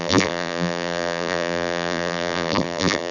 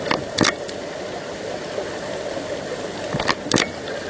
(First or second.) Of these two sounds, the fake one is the first